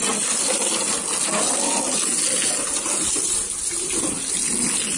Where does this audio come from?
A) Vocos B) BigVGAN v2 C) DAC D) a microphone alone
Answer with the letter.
D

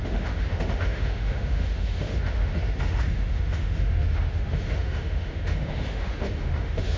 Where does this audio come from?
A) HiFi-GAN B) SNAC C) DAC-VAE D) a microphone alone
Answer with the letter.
C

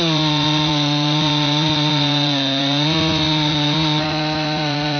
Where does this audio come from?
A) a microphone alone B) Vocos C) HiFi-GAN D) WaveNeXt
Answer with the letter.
B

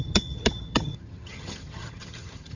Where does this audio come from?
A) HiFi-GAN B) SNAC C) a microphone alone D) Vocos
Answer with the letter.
A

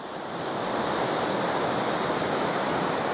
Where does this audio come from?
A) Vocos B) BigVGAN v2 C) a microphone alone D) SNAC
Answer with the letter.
C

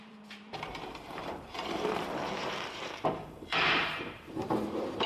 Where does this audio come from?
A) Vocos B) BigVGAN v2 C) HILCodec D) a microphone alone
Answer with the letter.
B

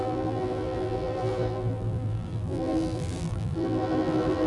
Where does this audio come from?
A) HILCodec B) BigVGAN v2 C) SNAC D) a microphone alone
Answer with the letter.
B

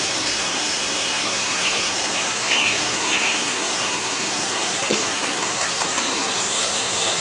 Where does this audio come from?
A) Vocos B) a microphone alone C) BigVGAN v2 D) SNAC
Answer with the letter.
D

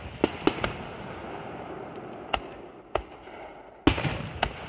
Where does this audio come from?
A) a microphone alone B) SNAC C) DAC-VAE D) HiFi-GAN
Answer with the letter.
A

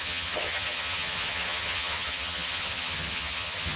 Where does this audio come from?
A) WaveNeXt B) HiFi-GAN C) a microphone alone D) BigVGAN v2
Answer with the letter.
B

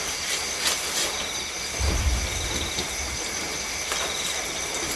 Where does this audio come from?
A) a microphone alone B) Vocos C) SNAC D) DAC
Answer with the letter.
A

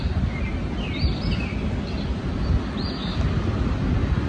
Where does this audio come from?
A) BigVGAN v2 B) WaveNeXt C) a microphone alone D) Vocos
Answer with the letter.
C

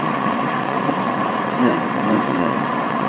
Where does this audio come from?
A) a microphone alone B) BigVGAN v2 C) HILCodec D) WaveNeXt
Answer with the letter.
D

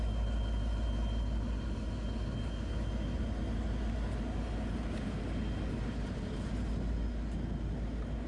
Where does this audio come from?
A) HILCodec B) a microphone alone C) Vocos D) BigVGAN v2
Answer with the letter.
B